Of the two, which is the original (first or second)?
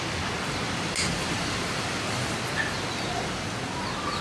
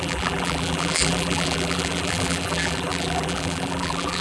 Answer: first